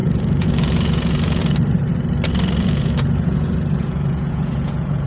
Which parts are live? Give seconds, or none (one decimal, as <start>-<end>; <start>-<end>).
1.4-2.6